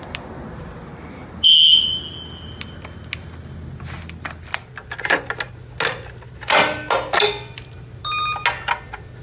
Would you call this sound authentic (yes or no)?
yes